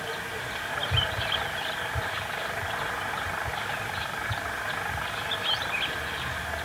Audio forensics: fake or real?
real